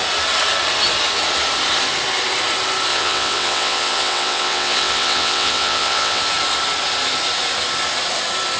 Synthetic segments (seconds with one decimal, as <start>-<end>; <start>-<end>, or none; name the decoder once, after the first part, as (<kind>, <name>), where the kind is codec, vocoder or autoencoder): 2.9-6.2 (vocoder, WaveNeXt)